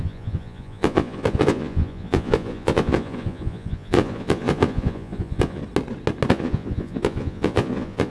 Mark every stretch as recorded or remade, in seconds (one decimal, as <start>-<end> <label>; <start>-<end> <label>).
0.0-5.6 remade; 5.6-6.3 recorded; 6.3-8.1 remade